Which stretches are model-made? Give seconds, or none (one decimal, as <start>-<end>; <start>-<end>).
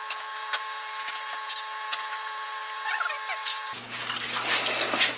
0.0-2.9; 3.4-4.0